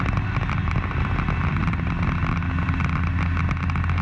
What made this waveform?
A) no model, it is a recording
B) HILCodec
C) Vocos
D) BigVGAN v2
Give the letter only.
A